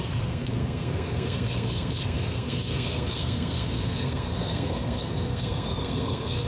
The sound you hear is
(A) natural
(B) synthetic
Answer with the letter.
B